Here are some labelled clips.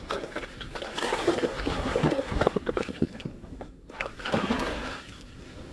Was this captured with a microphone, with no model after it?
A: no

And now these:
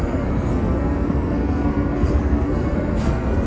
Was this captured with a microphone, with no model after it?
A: no